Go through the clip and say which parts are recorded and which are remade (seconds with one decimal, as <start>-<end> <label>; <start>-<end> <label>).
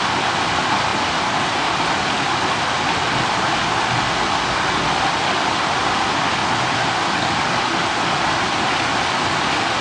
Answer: 0.0-9.8 recorded